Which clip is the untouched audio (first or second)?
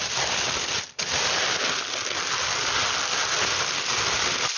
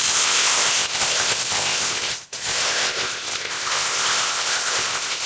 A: first